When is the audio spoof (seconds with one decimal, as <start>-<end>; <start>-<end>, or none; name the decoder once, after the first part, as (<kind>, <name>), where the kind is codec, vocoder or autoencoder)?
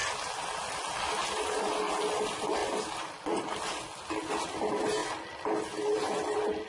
2.6-3.5 (vocoder, BigVGAN v2)